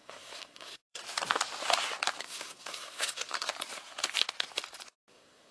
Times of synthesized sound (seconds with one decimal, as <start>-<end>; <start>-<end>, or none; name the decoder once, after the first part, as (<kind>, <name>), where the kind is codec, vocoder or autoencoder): 0.0-1.0 (codec, SNAC); 2.2-3.5; 5.1-5.5